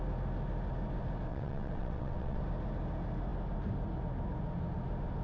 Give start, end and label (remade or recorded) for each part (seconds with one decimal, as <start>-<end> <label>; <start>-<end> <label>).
0.0-1.3 recorded; 1.3-2.4 remade; 2.4-5.2 recorded